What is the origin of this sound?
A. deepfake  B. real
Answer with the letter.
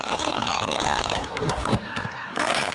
A